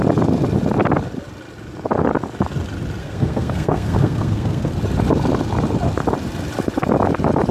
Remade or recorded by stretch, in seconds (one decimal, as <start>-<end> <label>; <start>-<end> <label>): 0.0-3.0 recorded; 3.0-4.7 remade; 4.7-7.5 recorded